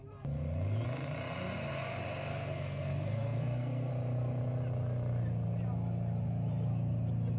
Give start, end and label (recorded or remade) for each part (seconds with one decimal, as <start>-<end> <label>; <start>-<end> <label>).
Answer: 0.0-2.3 recorded; 2.3-3.9 remade; 3.9-7.4 recorded